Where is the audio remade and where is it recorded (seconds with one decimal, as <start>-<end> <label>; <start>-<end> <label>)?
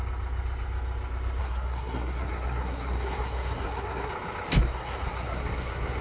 0.0-1.4 recorded; 1.4-4.1 remade; 4.1-4.6 recorded; 4.6-6.0 remade